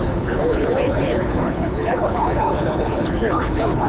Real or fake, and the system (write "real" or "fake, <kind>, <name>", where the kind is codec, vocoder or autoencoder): fake, codec, HILCodec